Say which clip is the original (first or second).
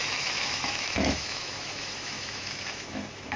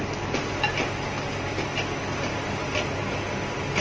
second